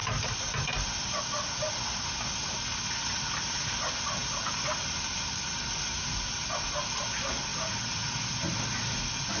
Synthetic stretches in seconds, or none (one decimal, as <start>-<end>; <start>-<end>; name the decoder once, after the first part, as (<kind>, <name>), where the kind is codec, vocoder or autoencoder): none